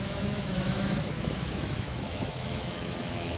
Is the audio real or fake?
fake